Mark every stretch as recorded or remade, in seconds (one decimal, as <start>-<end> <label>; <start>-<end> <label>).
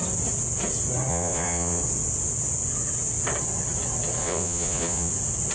0.0-1.1 recorded; 1.1-1.8 remade; 1.8-4.2 recorded; 4.2-5.1 remade; 5.1-5.5 recorded